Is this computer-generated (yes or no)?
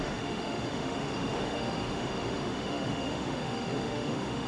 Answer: yes